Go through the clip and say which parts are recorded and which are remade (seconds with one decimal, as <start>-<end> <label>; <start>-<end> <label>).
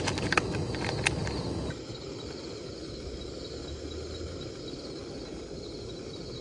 0.0-6.4 recorded